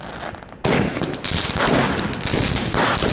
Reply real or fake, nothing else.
real